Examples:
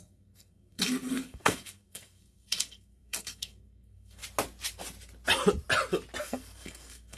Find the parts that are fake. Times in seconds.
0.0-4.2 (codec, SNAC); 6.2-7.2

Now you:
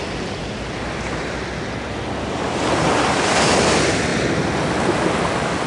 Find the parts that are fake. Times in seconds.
none

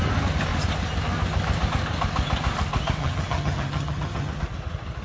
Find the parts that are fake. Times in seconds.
3.0-4.3 (vocoder, HiFi-GAN)